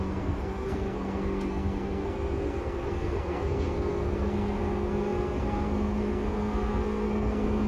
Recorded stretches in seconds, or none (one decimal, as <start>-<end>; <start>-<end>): none